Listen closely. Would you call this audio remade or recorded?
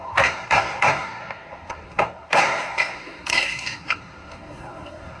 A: remade